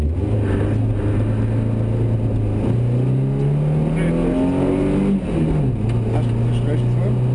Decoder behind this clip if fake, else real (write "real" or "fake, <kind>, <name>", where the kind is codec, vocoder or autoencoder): real